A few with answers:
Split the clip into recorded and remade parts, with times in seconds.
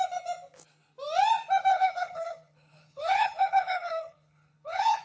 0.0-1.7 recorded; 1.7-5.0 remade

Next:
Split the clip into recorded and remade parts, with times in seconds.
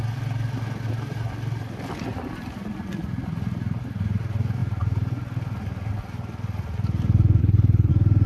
0.0-7.4 recorded; 7.4-7.9 remade; 7.9-8.3 recorded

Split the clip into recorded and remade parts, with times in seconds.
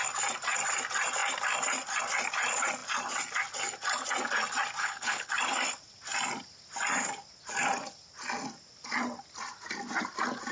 0.0-4.8 recorded; 4.8-5.3 remade; 5.3-10.5 recorded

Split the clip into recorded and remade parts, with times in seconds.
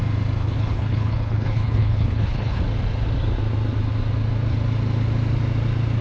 0.0-0.4 recorded; 0.4-2.6 remade; 2.6-6.0 recorded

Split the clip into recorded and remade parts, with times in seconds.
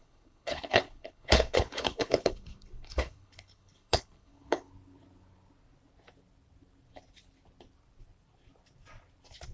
0.0-4.7 remade; 4.7-9.5 recorded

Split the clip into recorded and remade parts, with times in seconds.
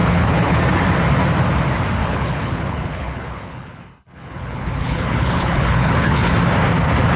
0.0-0.6 remade; 0.6-2.0 recorded; 2.0-6.3 remade; 6.3-7.2 recorded